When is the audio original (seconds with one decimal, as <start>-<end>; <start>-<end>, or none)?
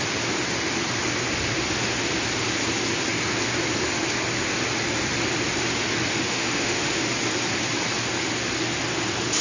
0.0-6.3; 7.0-9.4